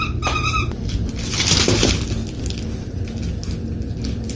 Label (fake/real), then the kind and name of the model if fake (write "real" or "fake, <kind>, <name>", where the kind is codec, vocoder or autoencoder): real